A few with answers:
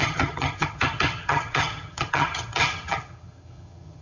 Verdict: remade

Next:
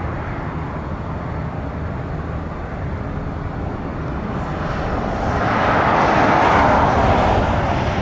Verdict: recorded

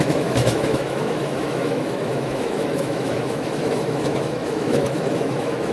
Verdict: remade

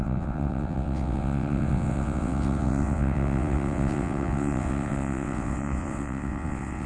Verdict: remade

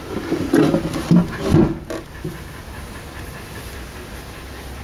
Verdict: recorded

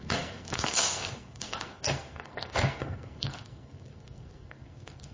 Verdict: remade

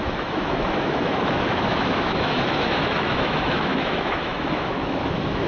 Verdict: remade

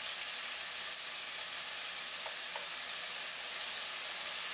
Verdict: recorded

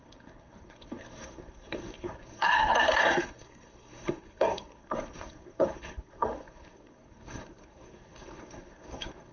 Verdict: remade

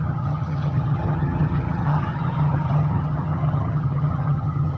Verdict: remade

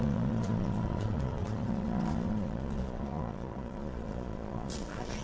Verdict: remade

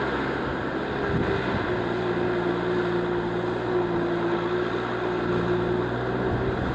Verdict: recorded